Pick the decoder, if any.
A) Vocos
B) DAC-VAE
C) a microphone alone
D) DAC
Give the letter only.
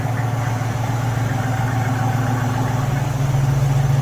C